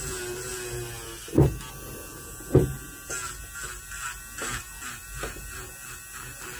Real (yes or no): yes